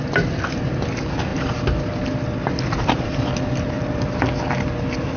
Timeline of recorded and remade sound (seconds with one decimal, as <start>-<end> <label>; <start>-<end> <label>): 0.0-2.4 recorded; 2.4-4.2 remade; 4.2-5.2 recorded